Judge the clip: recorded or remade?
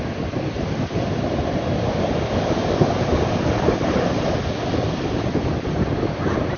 recorded